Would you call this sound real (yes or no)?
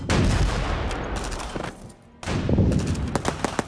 yes